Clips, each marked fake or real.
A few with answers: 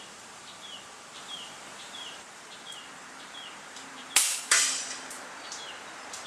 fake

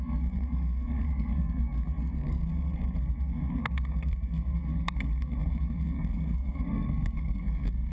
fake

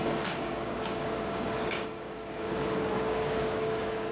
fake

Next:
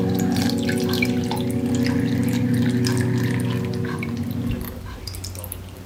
fake